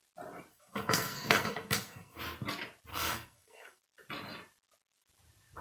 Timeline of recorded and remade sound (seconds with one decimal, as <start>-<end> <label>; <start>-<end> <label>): 0.0-0.5 recorded; 0.5-2.2 remade; 2.2-2.9 recorded; 2.9-3.8 remade; 3.8-5.6 recorded